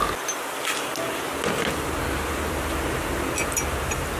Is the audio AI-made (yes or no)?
no